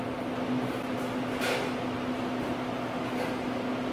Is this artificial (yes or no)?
no